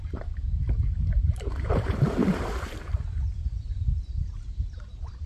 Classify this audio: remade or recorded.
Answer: remade